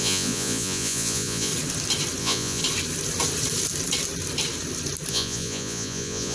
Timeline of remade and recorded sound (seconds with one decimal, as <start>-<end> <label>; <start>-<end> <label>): 0.0-1.5 remade; 1.5-2.2 recorded; 2.2-2.6 remade; 2.6-5.1 recorded; 5.1-6.3 remade